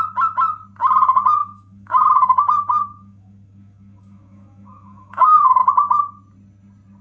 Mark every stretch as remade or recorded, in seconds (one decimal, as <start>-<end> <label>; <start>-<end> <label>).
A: 0.0-1.4 recorded; 1.4-5.6 remade; 5.6-7.0 recorded